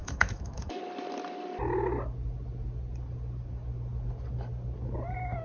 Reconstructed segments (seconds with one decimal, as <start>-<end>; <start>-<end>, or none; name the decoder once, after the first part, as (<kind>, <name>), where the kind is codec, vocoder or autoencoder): 0.0-0.8 (autoencoder, DAC-VAE)